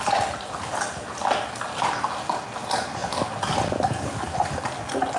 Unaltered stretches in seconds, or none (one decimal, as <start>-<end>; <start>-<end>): 0.0-5.2